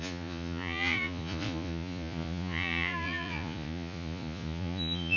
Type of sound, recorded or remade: remade